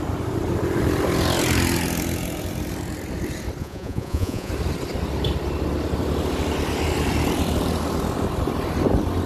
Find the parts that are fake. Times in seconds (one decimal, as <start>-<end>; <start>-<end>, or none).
3.6-4.5